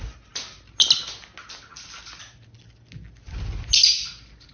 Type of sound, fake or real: real